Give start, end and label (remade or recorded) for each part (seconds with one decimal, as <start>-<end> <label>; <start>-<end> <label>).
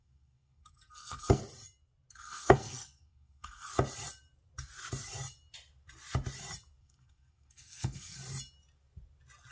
0.0-1.4 remade; 1.4-2.1 recorded; 2.1-3.7 remade; 3.7-6.8 recorded; 6.8-8.2 remade; 8.2-9.5 recorded